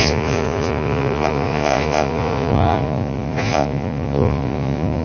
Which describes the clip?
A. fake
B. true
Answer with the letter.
A